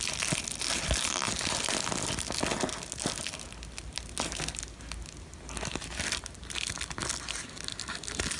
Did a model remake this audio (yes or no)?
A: no